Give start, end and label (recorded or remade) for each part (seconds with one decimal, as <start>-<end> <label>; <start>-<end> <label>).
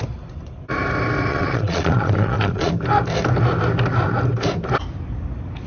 0.0-1.3 recorded; 1.3-2.7 remade; 2.7-5.7 recorded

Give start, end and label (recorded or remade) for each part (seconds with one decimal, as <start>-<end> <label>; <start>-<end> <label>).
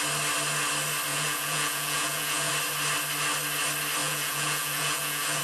0.0-1.1 recorded; 1.1-2.5 remade; 2.5-4.0 recorded; 4.0-5.4 remade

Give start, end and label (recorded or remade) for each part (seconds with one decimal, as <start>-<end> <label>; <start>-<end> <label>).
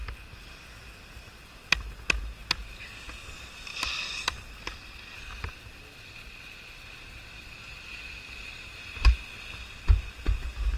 0.0-3.7 recorded; 3.7-8.7 remade; 8.7-10.8 recorded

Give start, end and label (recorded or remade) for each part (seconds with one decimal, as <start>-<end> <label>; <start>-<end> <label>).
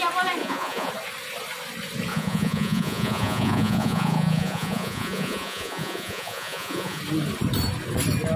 0.0-0.4 recorded; 0.4-0.9 remade; 0.9-2.1 recorded; 2.1-7.0 remade; 7.0-8.4 recorded